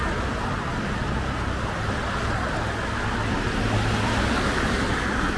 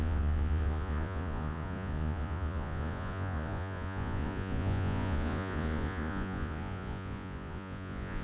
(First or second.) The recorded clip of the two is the first